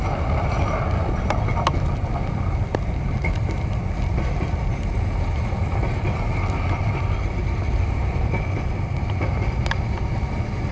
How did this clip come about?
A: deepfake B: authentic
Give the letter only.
B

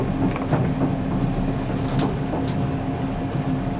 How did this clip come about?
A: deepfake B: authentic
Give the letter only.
B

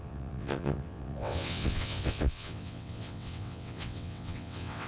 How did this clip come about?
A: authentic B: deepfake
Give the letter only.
B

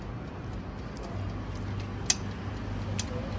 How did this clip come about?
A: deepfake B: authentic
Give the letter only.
B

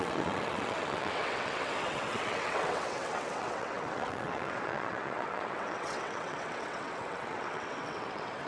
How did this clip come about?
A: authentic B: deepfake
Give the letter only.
B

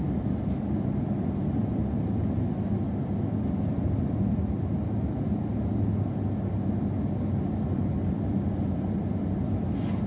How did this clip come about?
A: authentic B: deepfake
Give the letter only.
A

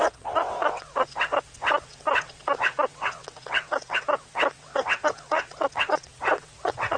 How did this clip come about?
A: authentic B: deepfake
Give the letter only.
B